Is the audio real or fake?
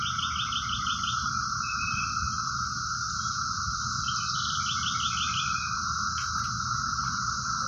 real